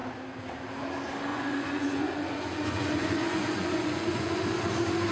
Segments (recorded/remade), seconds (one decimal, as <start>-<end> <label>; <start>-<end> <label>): 0.0-1.3 recorded; 1.3-4.4 remade; 4.4-5.1 recorded